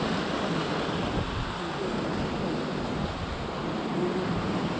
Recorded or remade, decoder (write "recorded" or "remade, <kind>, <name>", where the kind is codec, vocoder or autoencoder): remade, vocoder, BigVGAN v2